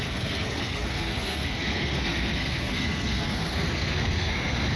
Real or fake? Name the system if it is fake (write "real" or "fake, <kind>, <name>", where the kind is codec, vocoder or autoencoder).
fake, codec, SNAC